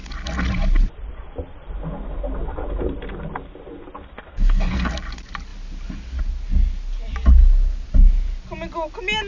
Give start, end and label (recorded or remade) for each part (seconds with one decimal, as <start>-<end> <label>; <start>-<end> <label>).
0.0-4.3 recorded; 4.3-4.9 remade; 4.9-9.3 recorded